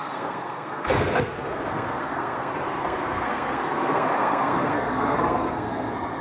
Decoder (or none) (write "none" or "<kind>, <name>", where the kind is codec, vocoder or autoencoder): codec, SNAC